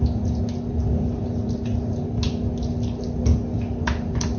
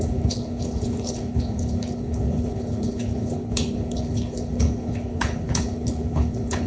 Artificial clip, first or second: second